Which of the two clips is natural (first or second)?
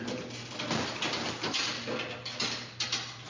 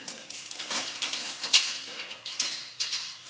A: first